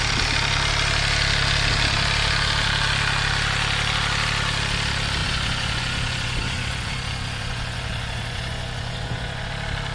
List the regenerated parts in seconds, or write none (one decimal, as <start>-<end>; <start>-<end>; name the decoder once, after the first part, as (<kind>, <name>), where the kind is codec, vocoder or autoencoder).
5.2-9.5 (vocoder, Vocos)